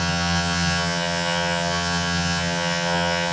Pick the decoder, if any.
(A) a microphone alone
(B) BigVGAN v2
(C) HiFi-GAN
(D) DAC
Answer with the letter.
C